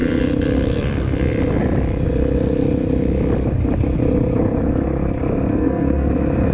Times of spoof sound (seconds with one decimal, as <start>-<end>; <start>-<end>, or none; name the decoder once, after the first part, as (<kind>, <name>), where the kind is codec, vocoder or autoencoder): 5.5-6.1 (codec, SNAC)